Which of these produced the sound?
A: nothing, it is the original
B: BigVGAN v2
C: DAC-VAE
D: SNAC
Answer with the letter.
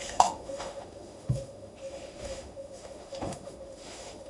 C